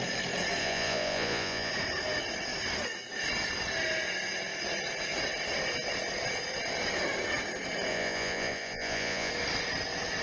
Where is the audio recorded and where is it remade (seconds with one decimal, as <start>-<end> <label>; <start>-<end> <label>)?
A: 0.0-0.6 recorded; 0.6-1.7 remade; 1.7-7.9 recorded; 7.9-9.3 remade; 9.3-10.2 recorded